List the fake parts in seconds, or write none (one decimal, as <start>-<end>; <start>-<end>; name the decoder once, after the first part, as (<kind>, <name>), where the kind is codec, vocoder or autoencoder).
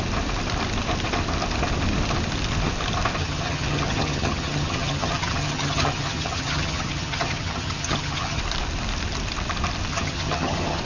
3.2-8.4 (vocoder, HiFi-GAN); 9.9-10.8